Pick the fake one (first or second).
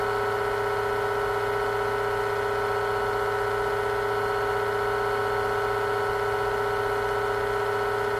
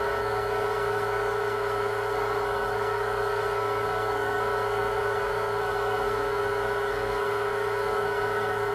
second